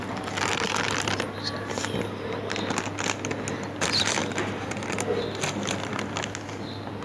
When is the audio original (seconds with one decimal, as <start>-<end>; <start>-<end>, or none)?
0.0-7.0